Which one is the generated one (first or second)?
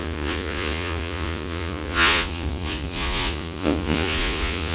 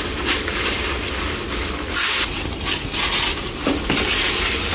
first